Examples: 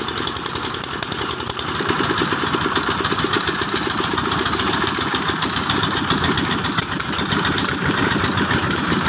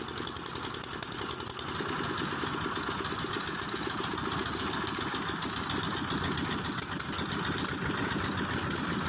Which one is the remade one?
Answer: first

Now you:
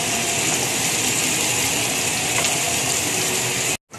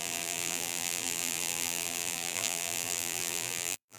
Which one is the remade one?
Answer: second